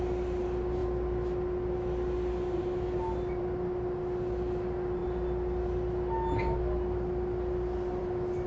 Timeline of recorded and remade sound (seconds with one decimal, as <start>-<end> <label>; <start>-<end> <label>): 0.0-8.5 recorded